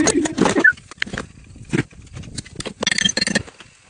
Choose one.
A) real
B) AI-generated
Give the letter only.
A